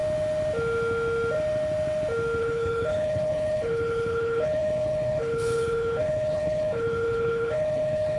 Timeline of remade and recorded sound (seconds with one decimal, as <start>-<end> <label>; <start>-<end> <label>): 0.0-2.4 recorded; 2.4-8.2 remade